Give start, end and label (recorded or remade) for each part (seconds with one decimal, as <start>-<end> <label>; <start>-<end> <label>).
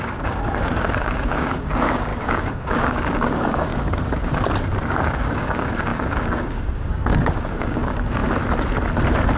0.0-3.7 remade; 3.7-5.0 recorded; 5.0-8.2 remade; 8.2-9.4 recorded